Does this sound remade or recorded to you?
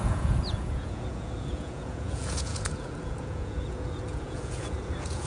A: remade